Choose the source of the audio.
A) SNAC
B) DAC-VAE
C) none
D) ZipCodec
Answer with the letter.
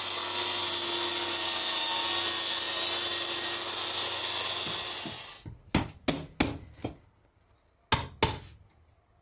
C